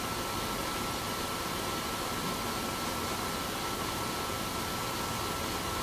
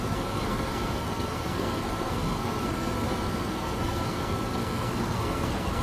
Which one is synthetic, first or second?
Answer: second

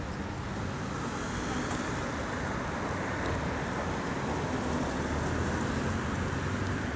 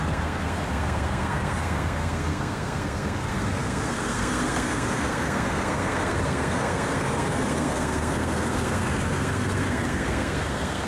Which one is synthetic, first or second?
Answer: second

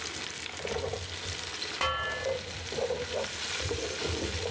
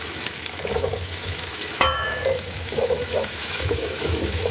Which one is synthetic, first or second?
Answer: second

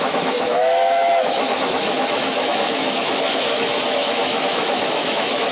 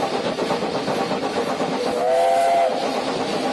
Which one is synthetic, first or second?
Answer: first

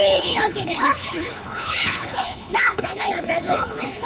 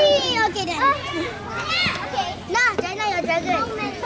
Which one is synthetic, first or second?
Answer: first